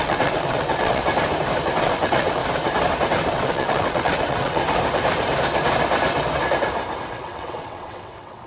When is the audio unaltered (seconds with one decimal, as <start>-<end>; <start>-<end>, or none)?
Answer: 1.0-1.8; 2.4-3.3; 4.6-7.1